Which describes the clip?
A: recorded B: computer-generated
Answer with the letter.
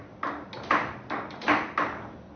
A